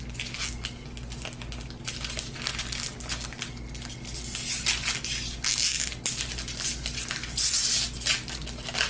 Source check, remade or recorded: recorded